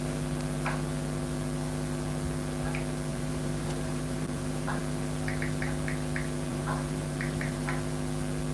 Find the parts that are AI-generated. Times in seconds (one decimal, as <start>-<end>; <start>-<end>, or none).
3.1-4.8; 6.5-7.7